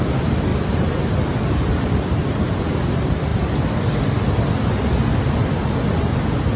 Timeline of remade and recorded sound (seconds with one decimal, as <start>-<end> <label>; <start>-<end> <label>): 0.0-0.5 recorded; 0.5-2.4 remade; 2.4-6.6 recorded